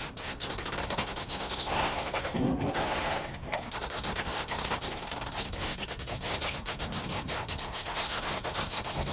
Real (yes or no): no